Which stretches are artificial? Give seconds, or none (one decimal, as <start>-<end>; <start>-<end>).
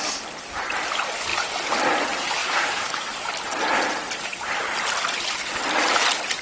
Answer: 2.4-3.3